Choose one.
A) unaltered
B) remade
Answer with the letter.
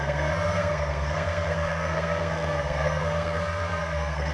B